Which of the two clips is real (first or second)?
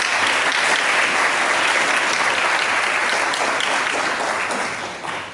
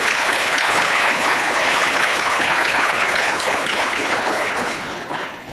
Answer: first